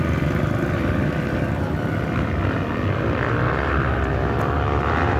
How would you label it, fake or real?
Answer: real